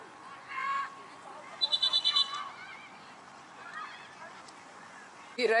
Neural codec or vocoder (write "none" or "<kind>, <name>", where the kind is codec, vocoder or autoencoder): vocoder, Vocos